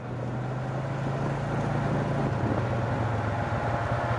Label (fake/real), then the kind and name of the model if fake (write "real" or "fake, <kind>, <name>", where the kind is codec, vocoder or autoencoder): real